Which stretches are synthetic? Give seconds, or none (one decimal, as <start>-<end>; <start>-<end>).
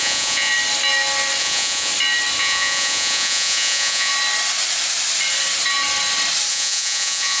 0.0-0.5; 1.4-1.9; 2.4-4.1; 6.5-7.4